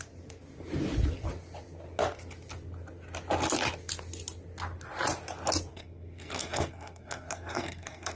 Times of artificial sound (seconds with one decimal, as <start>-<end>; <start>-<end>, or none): 5.7-8.2